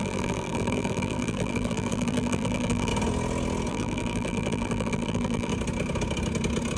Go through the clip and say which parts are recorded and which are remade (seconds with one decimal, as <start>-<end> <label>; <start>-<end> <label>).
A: 0.0-2.9 remade; 2.9-3.7 recorded; 3.7-5.5 remade; 5.5-6.8 recorded

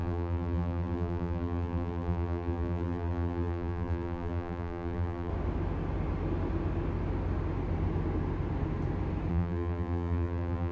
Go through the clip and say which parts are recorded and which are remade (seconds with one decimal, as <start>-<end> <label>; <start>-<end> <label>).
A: 0.0-5.3 remade; 5.3-9.3 recorded; 9.3-10.7 remade

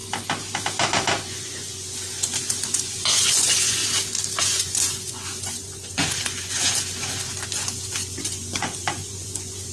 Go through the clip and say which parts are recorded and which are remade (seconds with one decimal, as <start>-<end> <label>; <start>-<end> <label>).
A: 0.0-1.2 recorded; 1.2-3.8 remade; 3.8-4.4 recorded; 4.4-9.7 remade

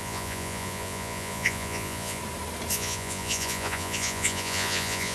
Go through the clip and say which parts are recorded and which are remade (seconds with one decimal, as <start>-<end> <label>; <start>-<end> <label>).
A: 0.0-2.2 remade; 2.2-2.7 recorded; 2.7-5.1 remade

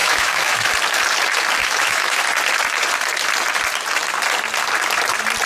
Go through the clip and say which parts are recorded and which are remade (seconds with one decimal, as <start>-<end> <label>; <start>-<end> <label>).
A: 0.0-0.7 remade; 0.7-1.6 recorded; 1.6-2.2 remade; 2.2-5.5 recorded

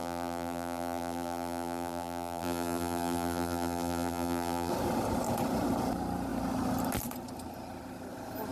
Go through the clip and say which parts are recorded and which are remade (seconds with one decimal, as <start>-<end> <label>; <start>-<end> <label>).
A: 0.0-4.7 remade; 4.7-8.5 recorded

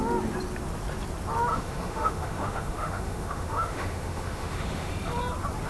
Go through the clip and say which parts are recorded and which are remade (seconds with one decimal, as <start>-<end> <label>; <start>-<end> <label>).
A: 0.0-1.5 recorded; 1.5-4.9 remade; 4.9-5.7 recorded

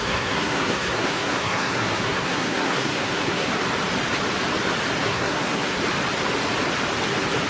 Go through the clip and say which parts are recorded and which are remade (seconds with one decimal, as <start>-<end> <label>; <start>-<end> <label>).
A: 0.0-3.5 remade; 3.5-5.0 recorded; 5.0-5.8 remade; 5.8-7.5 recorded